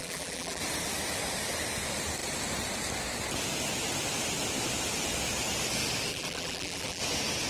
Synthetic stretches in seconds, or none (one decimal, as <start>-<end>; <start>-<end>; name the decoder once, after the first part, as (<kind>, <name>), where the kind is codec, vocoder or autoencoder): 0.0-0.6 (vocoder, BigVGAN v2); 6.1-7.0